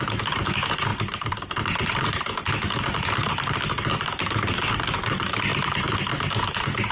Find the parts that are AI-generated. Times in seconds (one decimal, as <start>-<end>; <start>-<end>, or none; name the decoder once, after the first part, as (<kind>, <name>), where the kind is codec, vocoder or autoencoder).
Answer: 0.9-4.3 (vocoder, BigVGAN v2)